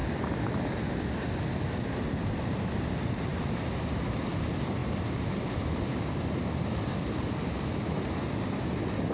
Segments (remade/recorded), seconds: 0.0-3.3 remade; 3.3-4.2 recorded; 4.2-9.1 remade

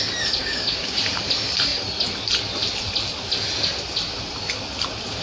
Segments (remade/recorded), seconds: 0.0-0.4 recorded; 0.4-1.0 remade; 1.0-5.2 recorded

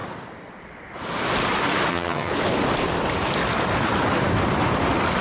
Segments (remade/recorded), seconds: 0.0-1.9 recorded; 1.9-2.3 remade; 2.3-5.2 recorded